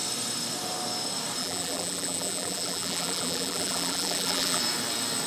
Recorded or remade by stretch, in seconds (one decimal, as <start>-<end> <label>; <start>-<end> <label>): 0.0-1.4 recorded; 1.4-4.6 remade; 4.6-5.3 recorded